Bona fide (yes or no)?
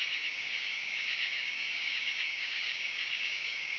no